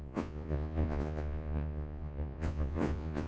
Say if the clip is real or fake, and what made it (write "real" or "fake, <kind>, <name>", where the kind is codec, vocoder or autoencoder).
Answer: fake, vocoder, Vocos